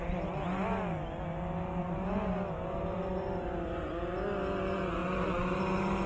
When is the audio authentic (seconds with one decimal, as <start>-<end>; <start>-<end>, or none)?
0.0-1.8; 3.9-6.1